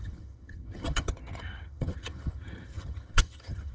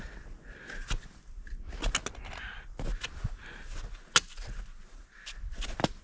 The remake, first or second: first